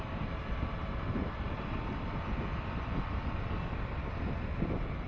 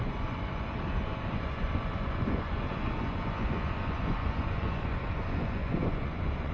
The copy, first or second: second